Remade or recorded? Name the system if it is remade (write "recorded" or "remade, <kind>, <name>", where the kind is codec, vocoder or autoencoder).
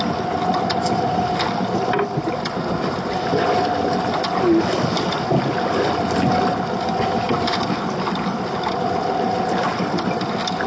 recorded